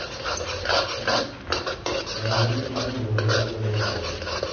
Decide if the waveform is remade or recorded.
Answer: recorded